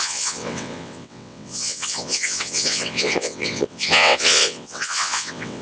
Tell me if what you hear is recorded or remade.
remade